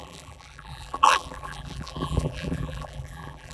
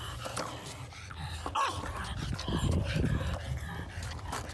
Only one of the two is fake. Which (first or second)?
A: first